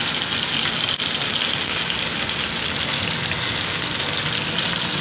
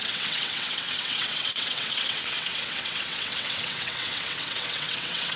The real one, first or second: first